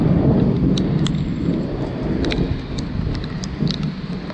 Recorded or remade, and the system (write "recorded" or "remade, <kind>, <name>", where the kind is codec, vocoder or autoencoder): recorded